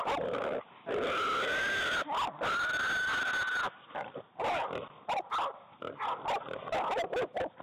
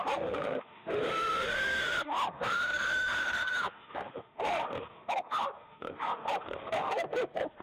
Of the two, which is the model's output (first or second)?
second